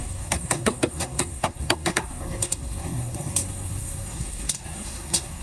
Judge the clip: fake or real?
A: fake